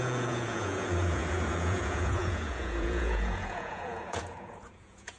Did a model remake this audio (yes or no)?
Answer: yes